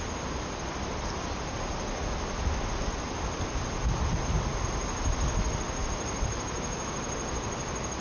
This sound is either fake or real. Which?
real